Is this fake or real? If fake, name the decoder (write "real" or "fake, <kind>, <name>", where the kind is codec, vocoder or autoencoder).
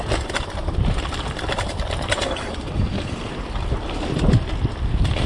real